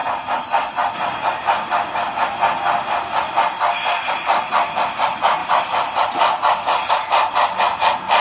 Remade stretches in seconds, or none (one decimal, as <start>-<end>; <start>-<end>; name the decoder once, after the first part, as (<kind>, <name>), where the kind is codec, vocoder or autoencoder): none